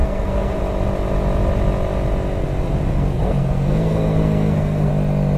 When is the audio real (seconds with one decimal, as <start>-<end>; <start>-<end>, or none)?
0.6-2.9; 4.9-5.4